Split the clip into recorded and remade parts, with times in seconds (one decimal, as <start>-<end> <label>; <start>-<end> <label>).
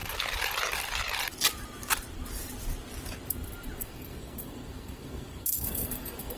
0.0-3.8 recorded; 3.8-6.4 remade